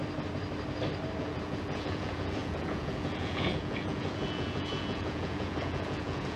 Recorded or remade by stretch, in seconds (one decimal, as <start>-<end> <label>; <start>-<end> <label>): 0.0-1.2 recorded; 1.2-6.4 remade